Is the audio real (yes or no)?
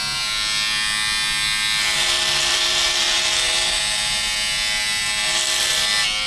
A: yes